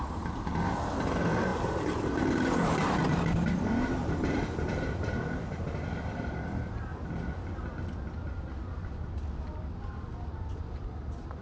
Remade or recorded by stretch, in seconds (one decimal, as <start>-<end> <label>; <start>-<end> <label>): 0.0-6.9 remade; 6.9-10.5 recorded; 10.5-11.4 remade